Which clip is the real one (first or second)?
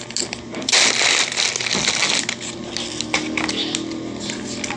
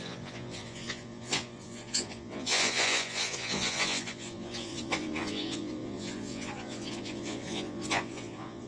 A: first